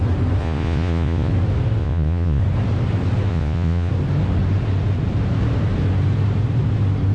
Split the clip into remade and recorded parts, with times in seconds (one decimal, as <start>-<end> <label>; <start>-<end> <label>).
0.0-0.4 recorded; 0.4-1.3 remade; 1.3-1.8 recorded; 1.8-2.4 remade; 2.4-3.3 recorded; 3.3-3.9 remade; 3.9-7.1 recorded